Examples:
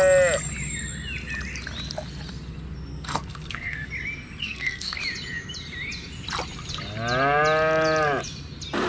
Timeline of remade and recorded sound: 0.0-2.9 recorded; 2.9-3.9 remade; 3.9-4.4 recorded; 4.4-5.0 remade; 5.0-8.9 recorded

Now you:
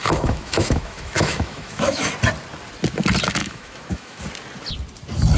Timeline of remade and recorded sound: 0.0-2.1 remade; 2.1-3.4 recorded; 3.4-4.2 remade; 4.2-5.4 recorded

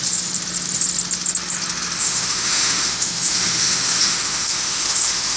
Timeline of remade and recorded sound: 0.0-2.0 recorded; 2.0-5.4 remade

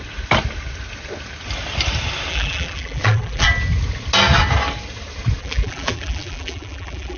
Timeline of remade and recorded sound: 0.0-2.3 recorded; 2.3-3.5 remade; 3.5-5.4 recorded; 5.4-7.2 remade

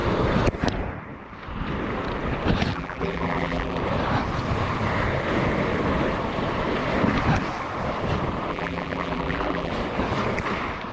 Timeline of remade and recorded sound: 0.0-2.7 recorded; 2.7-3.8 remade; 3.8-8.5 recorded; 8.5-9.7 remade; 9.7-10.9 recorded